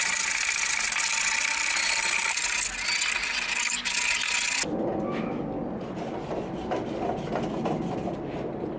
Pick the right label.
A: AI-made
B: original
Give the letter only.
B